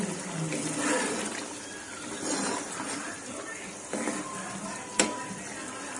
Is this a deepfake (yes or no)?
no